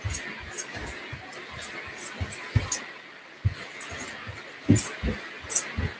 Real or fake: real